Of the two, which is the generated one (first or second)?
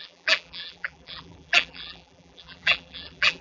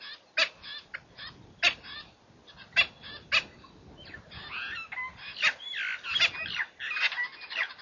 first